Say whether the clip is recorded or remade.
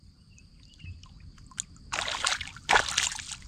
recorded